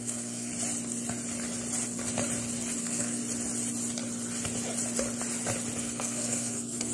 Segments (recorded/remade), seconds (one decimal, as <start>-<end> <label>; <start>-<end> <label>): 0.0-0.5 remade; 0.5-2.8 recorded; 2.8-3.2 remade; 3.2-5.8 recorded; 5.8-6.9 remade